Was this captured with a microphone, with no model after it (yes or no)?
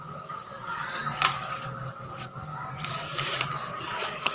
no